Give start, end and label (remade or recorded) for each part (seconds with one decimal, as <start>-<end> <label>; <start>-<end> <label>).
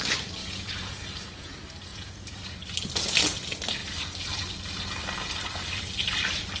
0.0-0.4 recorded; 0.4-1.5 remade; 1.5-1.9 recorded; 1.9-2.4 remade; 2.4-6.6 recorded